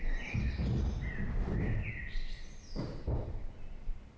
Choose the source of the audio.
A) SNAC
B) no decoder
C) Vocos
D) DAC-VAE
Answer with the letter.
B